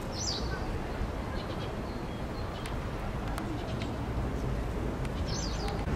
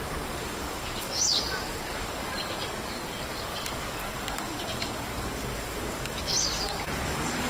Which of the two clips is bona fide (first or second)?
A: first